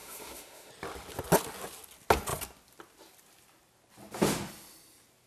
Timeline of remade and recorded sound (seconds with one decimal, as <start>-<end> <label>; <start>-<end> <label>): 0.0-0.7 remade; 0.7-5.3 recorded